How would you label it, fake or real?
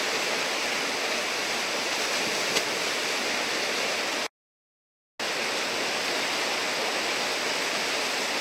real